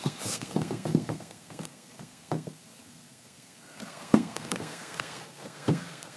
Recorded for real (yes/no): no